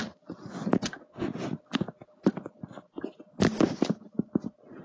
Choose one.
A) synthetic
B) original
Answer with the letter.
B